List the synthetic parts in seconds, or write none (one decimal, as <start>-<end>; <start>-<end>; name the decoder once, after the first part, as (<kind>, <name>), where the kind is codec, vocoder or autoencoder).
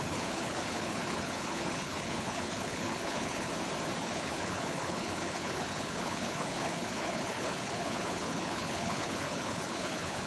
0.0-3.5 (codec, HILCodec); 4.0-10.3